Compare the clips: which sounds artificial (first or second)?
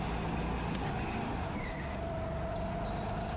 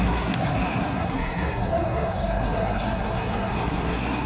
second